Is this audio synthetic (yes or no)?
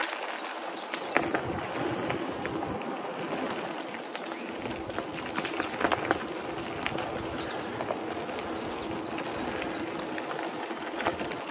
no